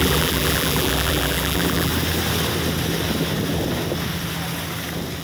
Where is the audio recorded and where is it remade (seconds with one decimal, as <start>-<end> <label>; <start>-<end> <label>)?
0.0-1.9 remade; 1.9-5.2 recorded